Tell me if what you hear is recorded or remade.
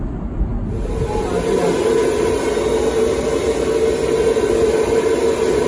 recorded